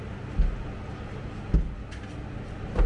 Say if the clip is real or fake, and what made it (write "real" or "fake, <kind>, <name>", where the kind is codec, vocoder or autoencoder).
real